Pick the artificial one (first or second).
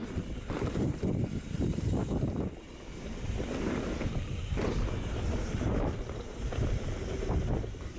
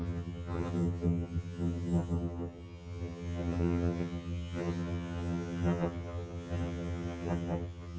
second